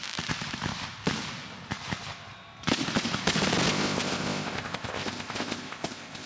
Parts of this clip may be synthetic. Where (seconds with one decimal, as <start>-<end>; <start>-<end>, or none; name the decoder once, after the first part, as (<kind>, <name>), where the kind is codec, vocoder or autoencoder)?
3.7-6.3 (codec, ZipCodec)